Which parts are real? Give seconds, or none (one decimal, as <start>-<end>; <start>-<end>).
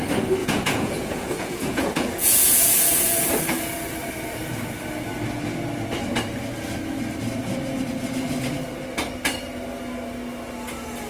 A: 0.0-0.4; 3.3-11.1